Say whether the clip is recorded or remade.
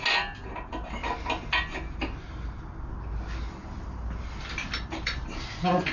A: recorded